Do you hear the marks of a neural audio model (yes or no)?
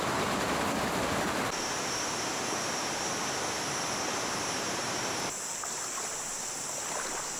no